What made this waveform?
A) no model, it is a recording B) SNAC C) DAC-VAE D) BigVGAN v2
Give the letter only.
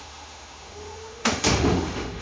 C